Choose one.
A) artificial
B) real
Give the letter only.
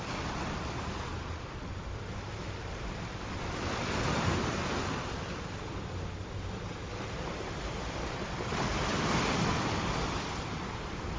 B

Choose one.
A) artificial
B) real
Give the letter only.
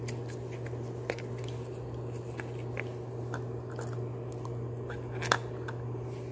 B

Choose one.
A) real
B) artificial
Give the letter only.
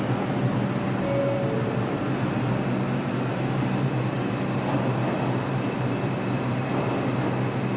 A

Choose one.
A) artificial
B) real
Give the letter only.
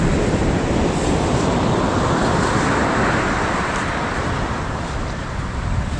A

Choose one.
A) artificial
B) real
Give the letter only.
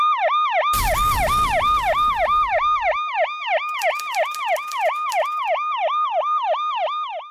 B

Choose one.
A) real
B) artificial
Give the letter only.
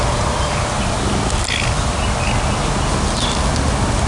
A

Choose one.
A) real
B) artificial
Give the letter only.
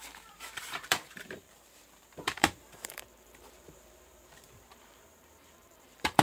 B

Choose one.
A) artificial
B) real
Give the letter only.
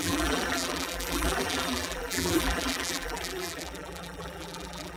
A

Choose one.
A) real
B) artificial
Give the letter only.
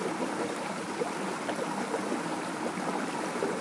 A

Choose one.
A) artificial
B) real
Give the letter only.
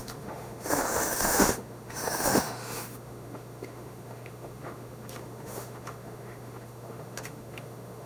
A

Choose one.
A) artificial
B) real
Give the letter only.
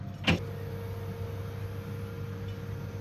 B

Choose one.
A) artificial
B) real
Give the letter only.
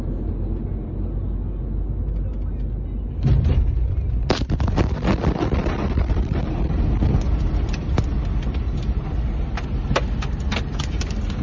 B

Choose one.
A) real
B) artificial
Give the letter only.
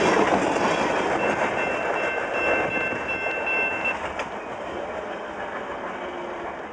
A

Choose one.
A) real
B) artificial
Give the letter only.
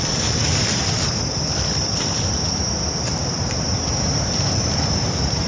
B